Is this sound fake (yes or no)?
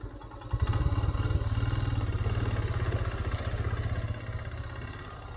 no